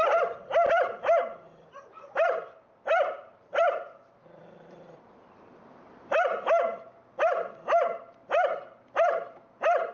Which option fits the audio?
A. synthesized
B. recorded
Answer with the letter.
A